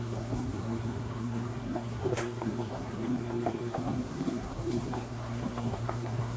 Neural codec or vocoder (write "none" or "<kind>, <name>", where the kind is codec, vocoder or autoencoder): codec, SNAC